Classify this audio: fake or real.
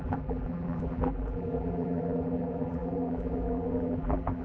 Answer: fake